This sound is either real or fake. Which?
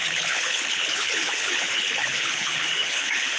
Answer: fake